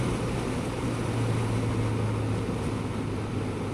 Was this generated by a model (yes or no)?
no